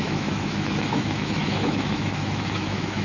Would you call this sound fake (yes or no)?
yes